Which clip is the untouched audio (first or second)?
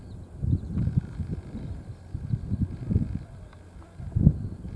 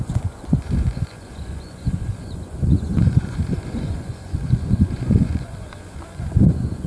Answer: first